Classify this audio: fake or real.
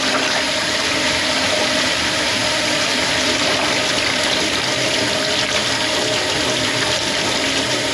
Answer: fake